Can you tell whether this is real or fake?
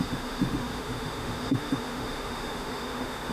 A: fake